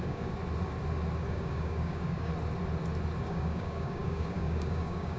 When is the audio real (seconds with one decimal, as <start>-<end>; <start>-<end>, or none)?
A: 0.4-1.3; 2.3-3.2